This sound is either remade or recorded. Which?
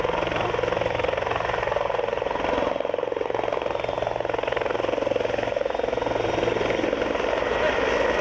recorded